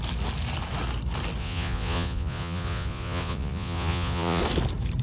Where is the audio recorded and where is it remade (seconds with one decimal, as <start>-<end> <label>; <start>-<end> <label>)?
0.0-1.4 recorded; 1.4-4.4 remade; 4.4-5.0 recorded

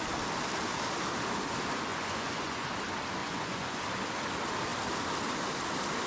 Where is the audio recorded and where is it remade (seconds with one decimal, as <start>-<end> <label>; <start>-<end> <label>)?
0.0-1.9 recorded; 1.9-2.7 remade; 2.7-3.2 recorded; 3.2-3.8 remade; 3.8-6.1 recorded

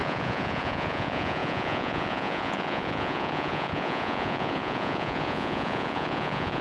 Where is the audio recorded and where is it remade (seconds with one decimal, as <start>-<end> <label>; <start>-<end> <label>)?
0.0-6.6 remade

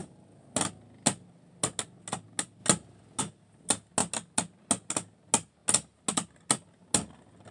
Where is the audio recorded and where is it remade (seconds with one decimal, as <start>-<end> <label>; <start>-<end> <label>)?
0.0-7.5 recorded

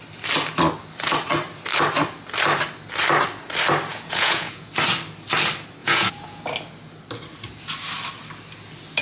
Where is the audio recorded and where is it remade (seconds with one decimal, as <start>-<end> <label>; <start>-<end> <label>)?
0.0-3.9 recorded; 3.9-4.7 remade; 4.7-5.8 recorded; 5.8-6.4 remade; 6.4-9.0 recorded